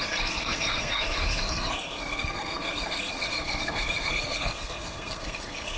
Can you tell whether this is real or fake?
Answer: fake